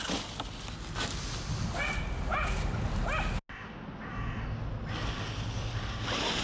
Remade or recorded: recorded